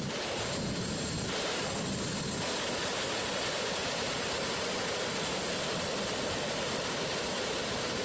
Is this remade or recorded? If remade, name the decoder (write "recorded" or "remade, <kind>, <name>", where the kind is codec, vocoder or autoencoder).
recorded